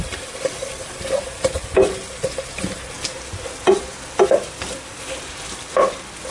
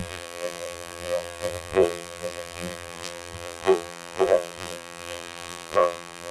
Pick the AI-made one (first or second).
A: second